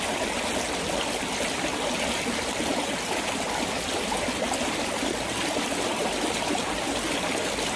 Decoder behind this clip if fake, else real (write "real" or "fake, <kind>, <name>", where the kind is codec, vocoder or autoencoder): real